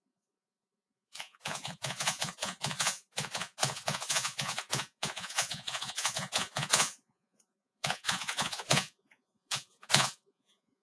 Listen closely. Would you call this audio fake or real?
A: fake